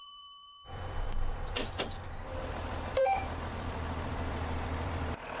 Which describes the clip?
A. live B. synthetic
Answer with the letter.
B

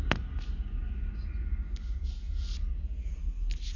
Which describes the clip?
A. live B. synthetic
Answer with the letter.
A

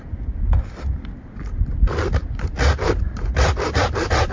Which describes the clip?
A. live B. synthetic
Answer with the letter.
A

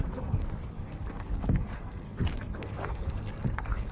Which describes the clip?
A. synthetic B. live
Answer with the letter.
A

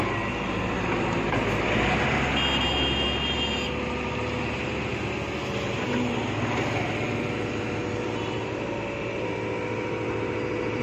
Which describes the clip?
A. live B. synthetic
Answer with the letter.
A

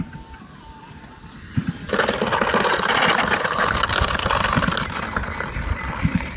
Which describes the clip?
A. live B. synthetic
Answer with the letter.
A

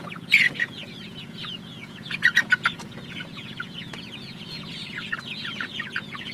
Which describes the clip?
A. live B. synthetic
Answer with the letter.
B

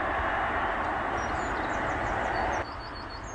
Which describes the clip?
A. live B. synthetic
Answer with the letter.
A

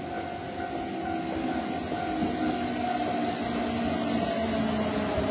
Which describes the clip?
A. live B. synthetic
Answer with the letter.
A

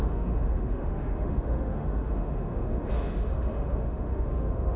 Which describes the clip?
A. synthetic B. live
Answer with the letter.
A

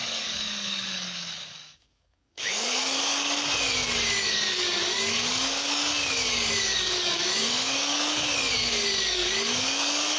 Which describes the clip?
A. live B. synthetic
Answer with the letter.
B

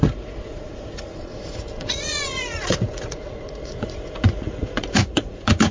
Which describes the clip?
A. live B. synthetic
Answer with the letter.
B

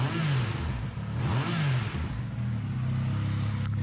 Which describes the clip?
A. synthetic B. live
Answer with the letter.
B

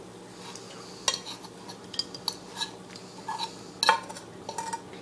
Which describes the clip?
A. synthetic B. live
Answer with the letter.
B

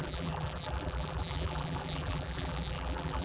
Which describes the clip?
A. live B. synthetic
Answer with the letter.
B